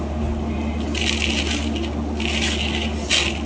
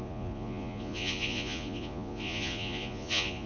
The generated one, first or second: second